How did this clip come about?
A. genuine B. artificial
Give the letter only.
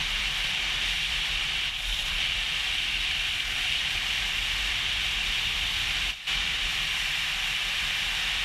B